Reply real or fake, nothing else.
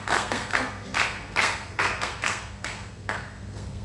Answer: fake